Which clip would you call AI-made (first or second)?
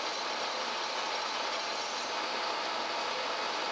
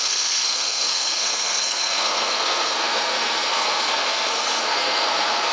second